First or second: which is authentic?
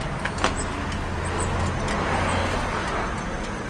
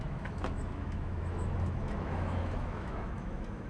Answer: first